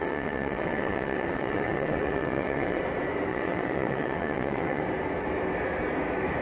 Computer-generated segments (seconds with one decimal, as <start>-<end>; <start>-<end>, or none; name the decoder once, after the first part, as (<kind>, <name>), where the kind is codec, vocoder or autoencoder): 0.0-2.8 (vocoder, WaveNeXt); 3.3-4.8